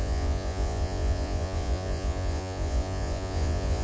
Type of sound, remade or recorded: remade